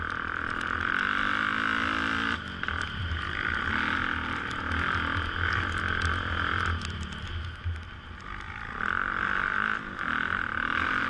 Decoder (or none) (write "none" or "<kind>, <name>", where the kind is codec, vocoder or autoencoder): none